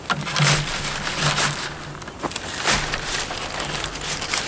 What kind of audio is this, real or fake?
real